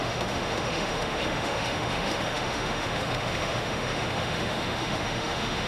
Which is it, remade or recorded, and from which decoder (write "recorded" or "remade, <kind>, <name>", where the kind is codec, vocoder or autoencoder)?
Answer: remade, autoencoder, DAC-VAE